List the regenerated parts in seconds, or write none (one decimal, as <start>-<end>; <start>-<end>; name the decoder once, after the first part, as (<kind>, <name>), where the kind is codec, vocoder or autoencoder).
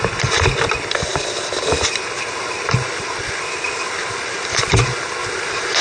none